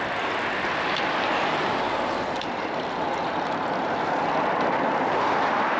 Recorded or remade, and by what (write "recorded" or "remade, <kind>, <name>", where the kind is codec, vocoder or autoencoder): recorded